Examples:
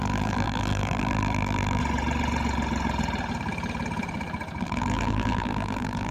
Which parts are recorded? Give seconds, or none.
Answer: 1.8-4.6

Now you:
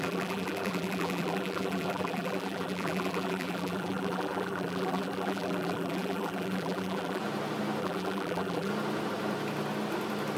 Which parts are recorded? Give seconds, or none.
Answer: 7.2-7.8; 8.7-10.4